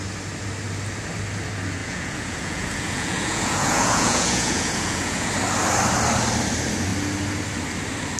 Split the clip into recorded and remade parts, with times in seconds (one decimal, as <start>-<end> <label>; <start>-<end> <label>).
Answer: 0.0-1.8 recorded; 1.8-5.3 remade; 5.3-8.2 recorded